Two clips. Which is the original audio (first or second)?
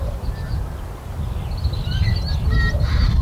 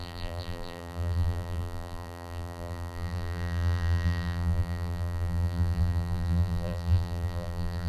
first